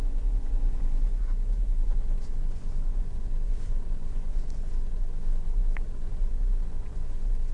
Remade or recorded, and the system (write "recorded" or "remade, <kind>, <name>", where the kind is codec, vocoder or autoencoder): remade, vocoder, Vocos